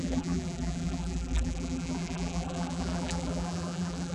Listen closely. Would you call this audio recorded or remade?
remade